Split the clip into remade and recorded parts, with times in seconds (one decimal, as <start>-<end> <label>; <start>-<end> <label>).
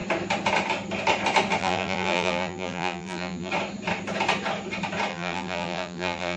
0.0-1.6 recorded; 1.6-3.5 remade; 3.5-5.1 recorded; 5.1-6.4 remade